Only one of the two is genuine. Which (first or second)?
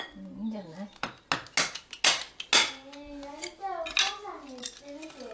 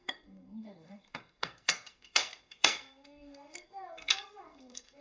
first